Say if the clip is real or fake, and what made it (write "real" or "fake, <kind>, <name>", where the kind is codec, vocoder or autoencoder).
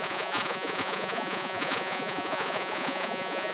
fake, vocoder, Vocos